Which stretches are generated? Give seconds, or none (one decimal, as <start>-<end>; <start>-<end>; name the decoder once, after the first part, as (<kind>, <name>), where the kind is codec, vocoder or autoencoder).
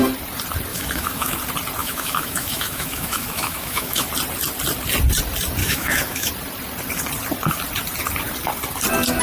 0.7-1.4 (autoencoder, DAC-VAE); 1.8-4.1; 5.6-6.3